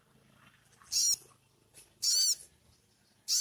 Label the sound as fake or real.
real